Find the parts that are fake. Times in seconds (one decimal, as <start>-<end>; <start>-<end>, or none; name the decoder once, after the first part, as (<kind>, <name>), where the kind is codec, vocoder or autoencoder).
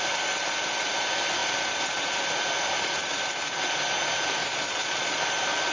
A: 4.4-5.2 (vocoder, Vocos)